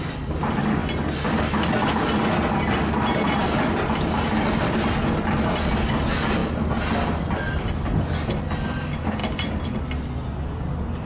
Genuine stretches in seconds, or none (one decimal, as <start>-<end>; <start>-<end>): 0.0-11.1